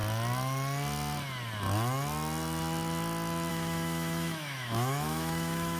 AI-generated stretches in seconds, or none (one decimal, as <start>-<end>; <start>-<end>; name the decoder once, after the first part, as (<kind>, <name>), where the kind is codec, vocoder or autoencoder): 3.5-5.8 (autoencoder, DAC-VAE)